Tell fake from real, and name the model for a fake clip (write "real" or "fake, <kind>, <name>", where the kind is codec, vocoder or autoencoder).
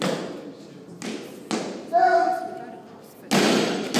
real